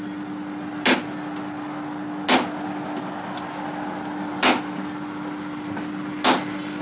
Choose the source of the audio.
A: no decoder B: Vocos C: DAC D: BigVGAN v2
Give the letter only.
A